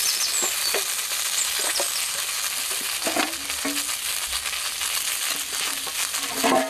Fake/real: real